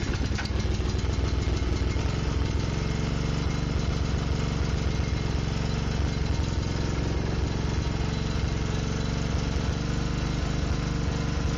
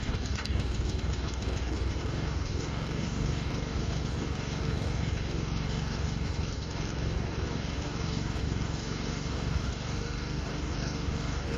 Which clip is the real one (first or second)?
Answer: first